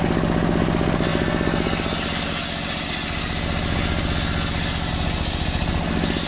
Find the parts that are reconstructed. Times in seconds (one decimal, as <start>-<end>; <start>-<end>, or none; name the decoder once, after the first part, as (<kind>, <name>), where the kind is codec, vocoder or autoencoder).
none